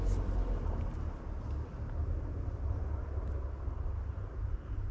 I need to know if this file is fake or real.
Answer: real